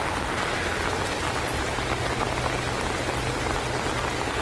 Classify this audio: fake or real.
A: real